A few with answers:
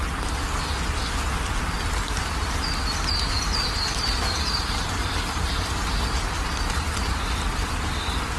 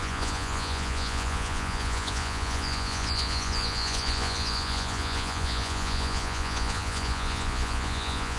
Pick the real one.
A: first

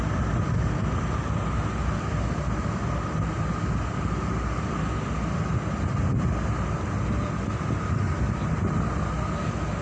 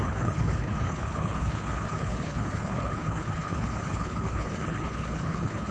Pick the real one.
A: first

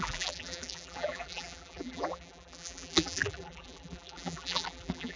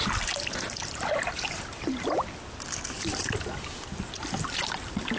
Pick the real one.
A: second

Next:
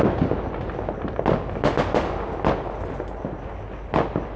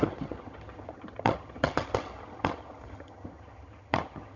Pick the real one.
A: first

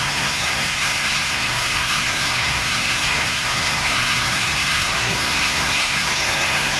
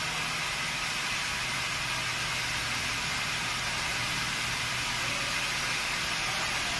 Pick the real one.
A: second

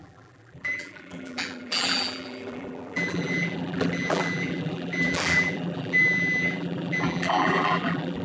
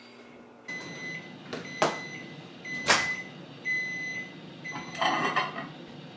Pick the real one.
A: second